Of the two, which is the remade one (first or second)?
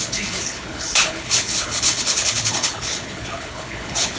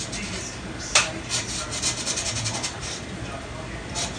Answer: first